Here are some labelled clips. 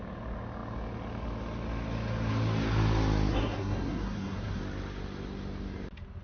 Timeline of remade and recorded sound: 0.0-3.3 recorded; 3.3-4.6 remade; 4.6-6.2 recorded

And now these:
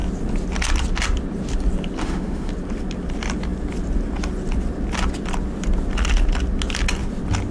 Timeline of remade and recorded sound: 0.0-2.0 recorded; 2.0-2.5 remade; 2.5-7.5 recorded

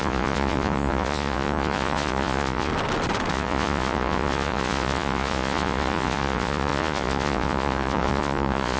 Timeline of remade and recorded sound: 0.0-2.7 remade; 2.7-3.3 recorded; 3.3-8.8 remade

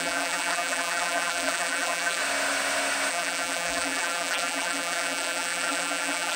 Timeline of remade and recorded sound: 0.0-2.2 remade; 2.2-3.1 recorded; 3.1-6.4 remade

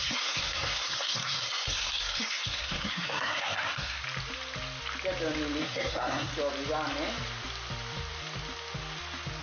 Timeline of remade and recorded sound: 0.0-4.0 remade; 4.0-5.6 recorded; 5.6-6.3 remade; 6.3-9.4 recorded

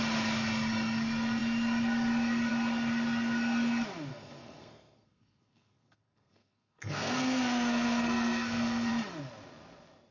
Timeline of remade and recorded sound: 0.0-4.1 recorded; 4.1-8.9 remade; 8.9-10.1 recorded